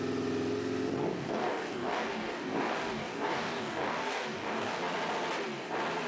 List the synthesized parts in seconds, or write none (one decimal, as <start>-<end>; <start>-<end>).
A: 1.1-4.8